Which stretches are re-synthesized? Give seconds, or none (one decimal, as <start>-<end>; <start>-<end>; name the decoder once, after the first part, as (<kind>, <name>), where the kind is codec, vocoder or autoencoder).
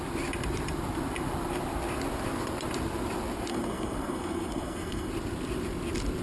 3.5-5.1 (codec, SNAC)